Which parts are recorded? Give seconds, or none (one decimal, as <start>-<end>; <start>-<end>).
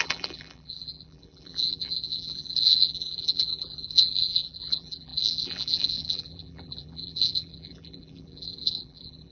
none